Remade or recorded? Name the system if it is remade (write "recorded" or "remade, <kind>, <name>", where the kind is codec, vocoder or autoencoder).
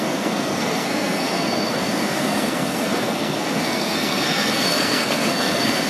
remade, codec, SNAC